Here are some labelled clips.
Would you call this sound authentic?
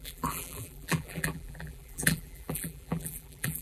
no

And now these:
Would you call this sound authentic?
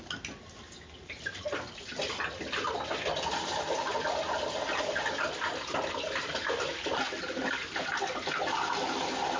yes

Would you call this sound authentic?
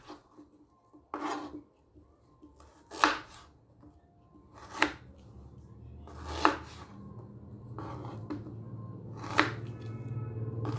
yes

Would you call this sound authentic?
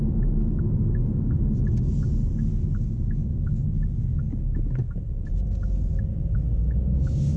yes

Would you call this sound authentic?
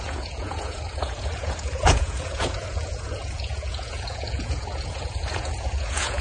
no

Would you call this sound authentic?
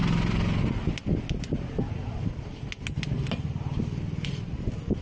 yes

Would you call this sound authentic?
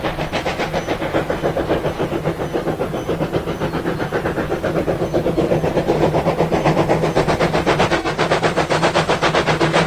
yes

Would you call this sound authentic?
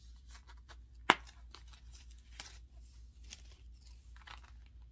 yes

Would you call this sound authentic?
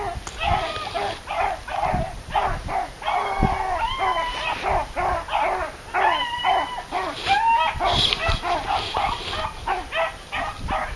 yes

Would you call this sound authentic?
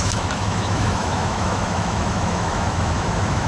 no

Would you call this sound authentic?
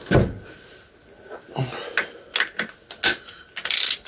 yes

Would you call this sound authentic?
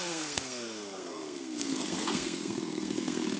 no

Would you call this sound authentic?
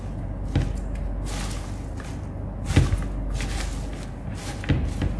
yes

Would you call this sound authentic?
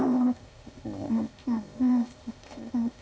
no